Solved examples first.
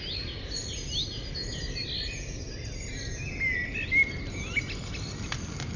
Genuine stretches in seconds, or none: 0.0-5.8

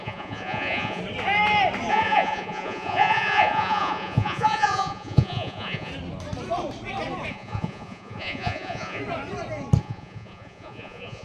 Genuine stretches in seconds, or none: 1.0-1.9; 5.9-7.3; 9.0-9.8

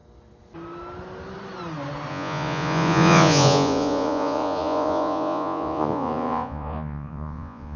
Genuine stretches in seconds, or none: 0.0-2.1

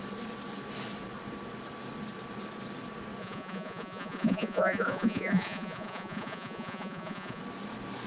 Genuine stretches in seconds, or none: 0.0-3.2; 7.4-8.1

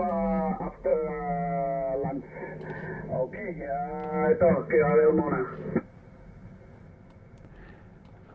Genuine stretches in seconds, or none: 0.0-8.3

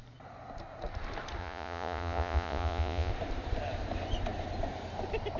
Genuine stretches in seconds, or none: 0.0-1.4; 3.1-5.4

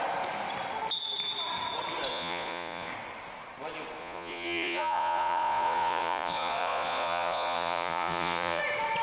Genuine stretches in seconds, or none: 0.0-2.1; 2.9-4.0; 8.6-9.0

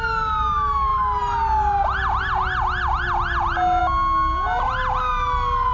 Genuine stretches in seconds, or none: 0.0-5.7